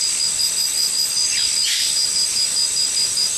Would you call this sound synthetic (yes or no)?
no